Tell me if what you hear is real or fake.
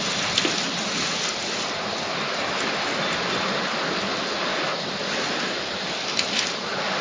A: real